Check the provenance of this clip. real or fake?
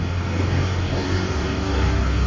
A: fake